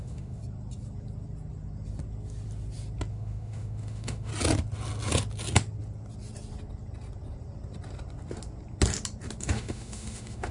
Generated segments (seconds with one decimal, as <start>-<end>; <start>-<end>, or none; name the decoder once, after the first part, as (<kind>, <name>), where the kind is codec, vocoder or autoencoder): 0.0-0.4 (autoencoder, DAC-VAE); 3.1-4.3; 9.4-10.5